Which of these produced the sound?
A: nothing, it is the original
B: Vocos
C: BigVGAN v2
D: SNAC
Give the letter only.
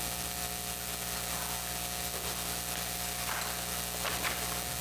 A